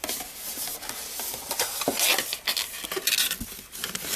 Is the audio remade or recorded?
recorded